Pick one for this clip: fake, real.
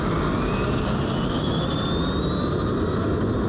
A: real